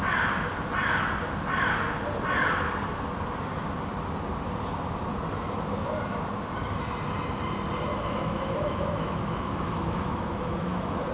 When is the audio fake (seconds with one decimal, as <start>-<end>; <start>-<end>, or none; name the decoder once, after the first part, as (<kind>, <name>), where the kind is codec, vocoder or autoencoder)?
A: 7.9-11.1 (autoencoder, DAC-VAE)